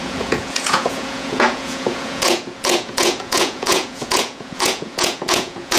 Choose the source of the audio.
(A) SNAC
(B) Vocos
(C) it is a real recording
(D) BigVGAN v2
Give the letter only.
B